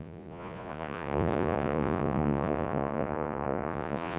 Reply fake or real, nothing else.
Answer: fake